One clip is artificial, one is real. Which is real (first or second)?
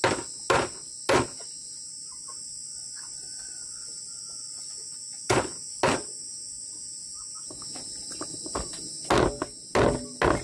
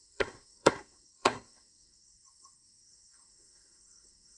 first